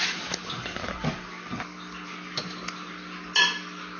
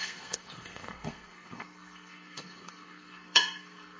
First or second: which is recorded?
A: first